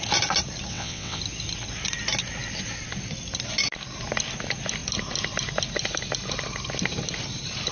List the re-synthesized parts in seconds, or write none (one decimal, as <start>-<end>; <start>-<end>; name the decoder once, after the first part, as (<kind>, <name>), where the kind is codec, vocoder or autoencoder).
0.7-1.2 (vocoder, WaveNeXt)